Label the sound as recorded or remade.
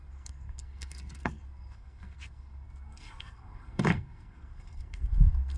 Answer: remade